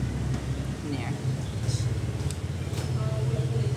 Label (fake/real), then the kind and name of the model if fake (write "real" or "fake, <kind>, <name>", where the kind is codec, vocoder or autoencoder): real